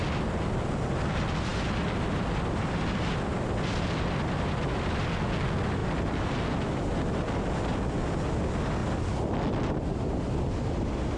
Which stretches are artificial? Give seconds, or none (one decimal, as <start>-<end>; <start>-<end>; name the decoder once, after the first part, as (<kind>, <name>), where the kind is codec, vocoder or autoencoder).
none

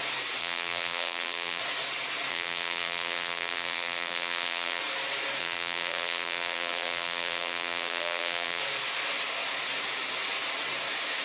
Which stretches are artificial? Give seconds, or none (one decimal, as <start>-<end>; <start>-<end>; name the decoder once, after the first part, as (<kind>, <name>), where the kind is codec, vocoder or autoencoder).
0.4-1.6 (vocoder, BigVGAN v2); 2.3-4.8; 5.4-8.6

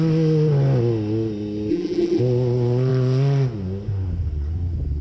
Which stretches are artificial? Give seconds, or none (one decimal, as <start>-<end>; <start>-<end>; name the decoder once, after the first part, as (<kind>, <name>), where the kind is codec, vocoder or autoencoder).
1.7-2.2 (vocoder, BigVGAN v2)

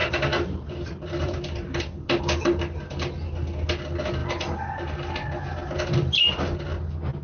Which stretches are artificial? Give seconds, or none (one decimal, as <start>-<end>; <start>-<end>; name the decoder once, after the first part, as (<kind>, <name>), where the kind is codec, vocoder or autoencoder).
0.0-2.2 (vocoder, BigVGAN v2)

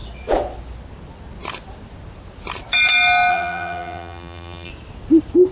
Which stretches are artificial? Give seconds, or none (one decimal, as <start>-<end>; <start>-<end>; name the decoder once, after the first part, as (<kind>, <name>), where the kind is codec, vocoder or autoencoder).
3.3-4.7 (vocoder, BigVGAN v2)

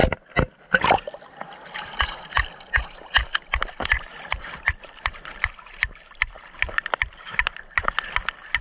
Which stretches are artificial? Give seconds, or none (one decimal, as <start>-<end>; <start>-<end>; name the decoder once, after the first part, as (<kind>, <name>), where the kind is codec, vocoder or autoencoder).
2.0-8.6 (vocoder, BigVGAN v2)

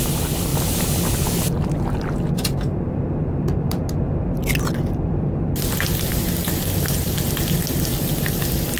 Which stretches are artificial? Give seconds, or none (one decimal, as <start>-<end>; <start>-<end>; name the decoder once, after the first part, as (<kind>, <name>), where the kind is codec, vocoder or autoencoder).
none

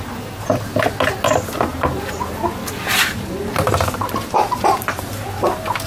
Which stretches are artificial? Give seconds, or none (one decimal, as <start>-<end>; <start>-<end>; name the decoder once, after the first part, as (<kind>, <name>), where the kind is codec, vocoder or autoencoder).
1.7-2.2 (vocoder, BigVGAN v2); 3.1-5.9